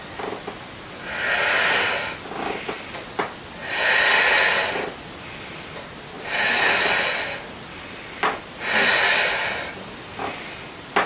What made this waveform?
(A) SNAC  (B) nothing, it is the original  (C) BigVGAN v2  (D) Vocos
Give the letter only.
B